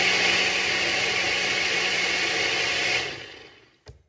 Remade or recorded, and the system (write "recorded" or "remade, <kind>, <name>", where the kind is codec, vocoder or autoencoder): recorded